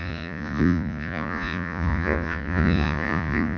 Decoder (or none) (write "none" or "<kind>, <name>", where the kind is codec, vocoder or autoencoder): vocoder, Vocos